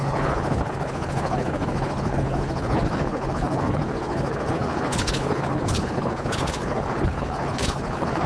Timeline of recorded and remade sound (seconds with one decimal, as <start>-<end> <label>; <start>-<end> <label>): 0.0-8.3 remade